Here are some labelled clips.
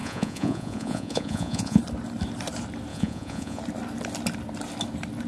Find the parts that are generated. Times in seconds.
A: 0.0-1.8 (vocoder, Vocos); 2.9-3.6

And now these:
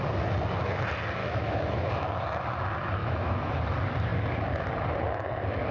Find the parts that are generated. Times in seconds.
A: 1.2-1.9 (autoencoder, DAC-VAE); 3.0-3.5

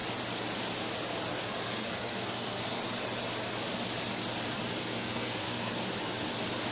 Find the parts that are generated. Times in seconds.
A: 1.3-2.8 (codec, SNAC); 4.8-5.7

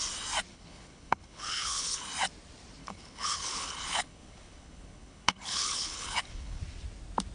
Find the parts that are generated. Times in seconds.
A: 0.5-2.0 (codec, HILCodec); 2.8-6.6

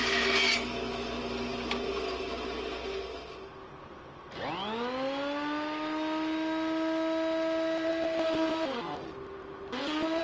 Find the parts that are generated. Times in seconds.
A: none

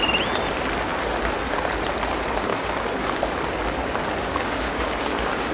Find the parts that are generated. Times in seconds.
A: 2.5-3.2 (codec, DAC); 4.2-5.5